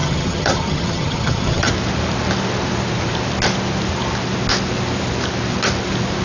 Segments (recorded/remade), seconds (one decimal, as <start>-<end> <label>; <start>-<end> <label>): 0.0-1.7 remade; 1.7-6.2 recorded